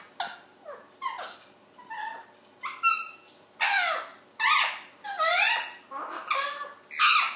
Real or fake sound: real